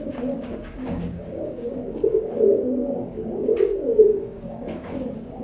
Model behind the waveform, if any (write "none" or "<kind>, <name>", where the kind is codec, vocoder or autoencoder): codec, DAC